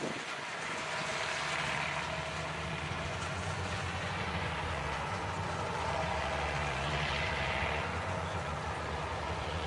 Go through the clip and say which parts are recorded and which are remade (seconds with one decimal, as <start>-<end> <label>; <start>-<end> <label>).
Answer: 0.0-1.1 remade; 1.1-2.9 recorded; 2.9-9.7 remade